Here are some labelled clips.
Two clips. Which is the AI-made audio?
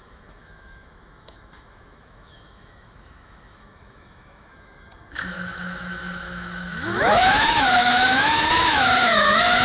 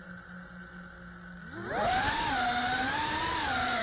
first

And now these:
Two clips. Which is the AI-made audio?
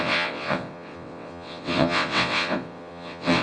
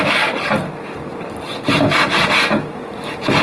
first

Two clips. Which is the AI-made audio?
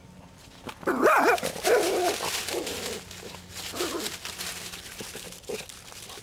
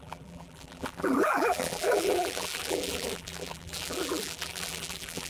second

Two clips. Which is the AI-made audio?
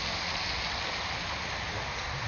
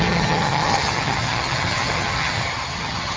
second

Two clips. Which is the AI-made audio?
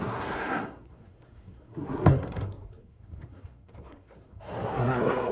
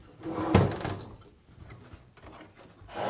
first